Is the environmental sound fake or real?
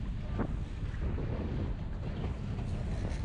real